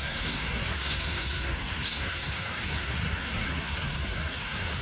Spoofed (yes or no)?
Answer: yes